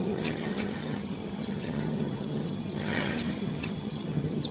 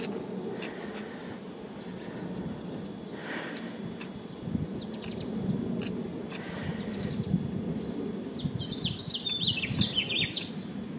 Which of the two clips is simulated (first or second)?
first